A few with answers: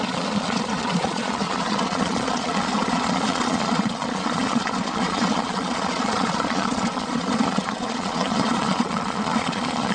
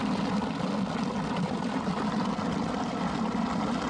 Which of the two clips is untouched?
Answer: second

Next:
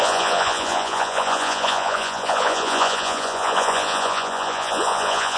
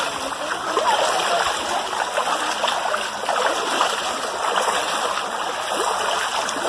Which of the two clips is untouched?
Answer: second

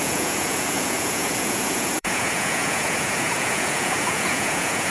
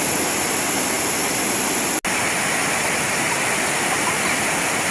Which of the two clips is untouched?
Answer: second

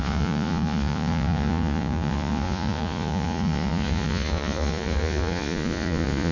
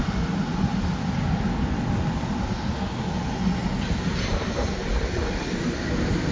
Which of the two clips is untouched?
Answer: second